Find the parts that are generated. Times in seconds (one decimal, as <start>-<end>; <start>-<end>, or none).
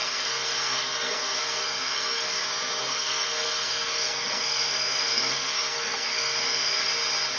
0.0-2.4; 2.8-6.9